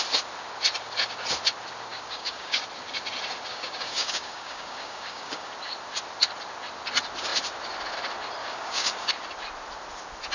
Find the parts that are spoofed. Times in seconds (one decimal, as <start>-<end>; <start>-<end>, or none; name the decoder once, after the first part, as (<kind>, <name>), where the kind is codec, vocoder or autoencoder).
1.9-2.6 (codec, DAC); 3.5-5.5; 8.4-9.1

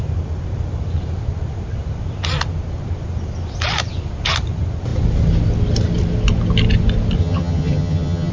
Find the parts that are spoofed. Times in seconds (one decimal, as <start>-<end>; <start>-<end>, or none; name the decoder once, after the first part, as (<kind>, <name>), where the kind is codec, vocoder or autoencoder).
7.2-8.3 (vocoder, HiFi-GAN)

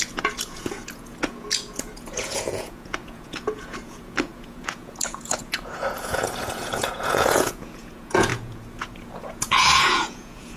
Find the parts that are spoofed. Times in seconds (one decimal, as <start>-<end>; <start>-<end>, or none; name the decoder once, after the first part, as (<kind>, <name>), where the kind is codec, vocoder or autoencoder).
0.0-10.6 (vocoder, Vocos)

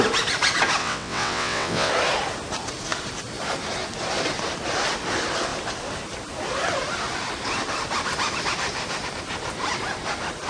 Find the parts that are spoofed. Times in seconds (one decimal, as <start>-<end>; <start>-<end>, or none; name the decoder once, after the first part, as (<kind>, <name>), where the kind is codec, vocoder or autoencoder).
0.8-1.9 (vocoder, WaveNeXt)